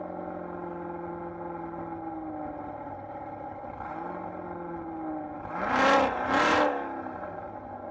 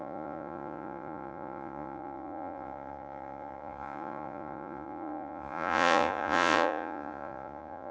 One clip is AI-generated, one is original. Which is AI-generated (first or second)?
second